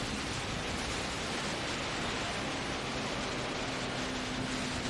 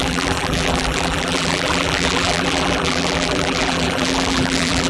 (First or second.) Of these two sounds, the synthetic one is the second